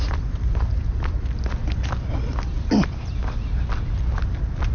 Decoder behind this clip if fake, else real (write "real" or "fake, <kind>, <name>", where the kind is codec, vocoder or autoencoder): real